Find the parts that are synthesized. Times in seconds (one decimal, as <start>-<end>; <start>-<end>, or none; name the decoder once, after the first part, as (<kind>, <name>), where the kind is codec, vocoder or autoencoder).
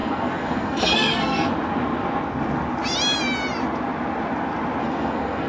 0.0-1.5 (codec, SNAC); 4.8-5.5